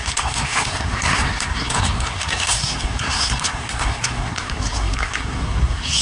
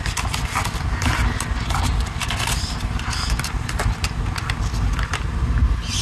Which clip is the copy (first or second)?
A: first